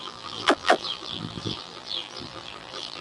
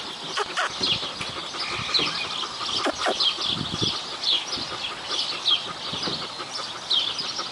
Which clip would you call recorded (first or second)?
second